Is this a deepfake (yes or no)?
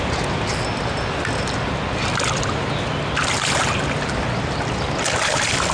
no